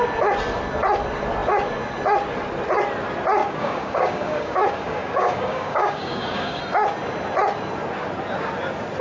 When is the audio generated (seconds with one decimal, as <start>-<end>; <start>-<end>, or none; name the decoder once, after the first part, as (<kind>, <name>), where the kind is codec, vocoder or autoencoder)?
3.4-6.6 (codec, DAC)